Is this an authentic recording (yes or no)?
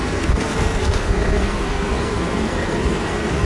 no